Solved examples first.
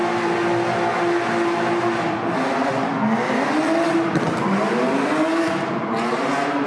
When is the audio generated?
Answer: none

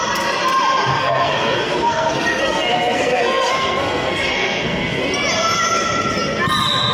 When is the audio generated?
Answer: 0.9-5.0 (codec, SNAC)

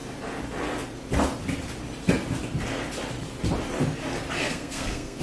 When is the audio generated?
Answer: 4.4-5.2 (codec, SNAC)